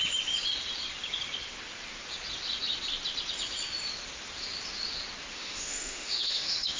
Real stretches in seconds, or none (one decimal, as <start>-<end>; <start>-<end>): 0.0-5.3